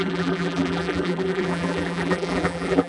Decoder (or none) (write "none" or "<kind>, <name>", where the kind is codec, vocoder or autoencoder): vocoder, BigVGAN v2